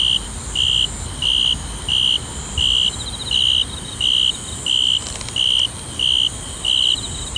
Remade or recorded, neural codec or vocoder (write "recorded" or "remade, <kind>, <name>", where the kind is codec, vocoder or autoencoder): recorded